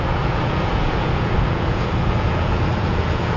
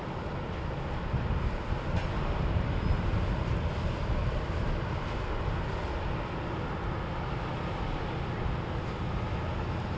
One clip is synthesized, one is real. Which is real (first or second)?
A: second